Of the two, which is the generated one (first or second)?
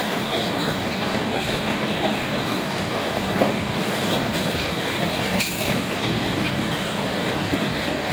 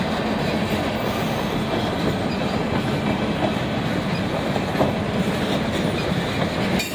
first